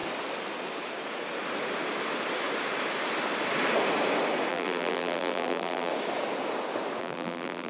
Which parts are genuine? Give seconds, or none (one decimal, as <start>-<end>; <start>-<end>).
0.0-4.5; 5.9-7.0